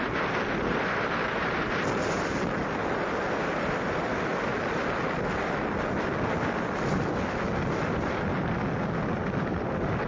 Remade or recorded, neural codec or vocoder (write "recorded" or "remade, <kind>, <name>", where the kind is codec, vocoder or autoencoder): recorded